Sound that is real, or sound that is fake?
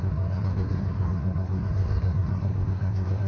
fake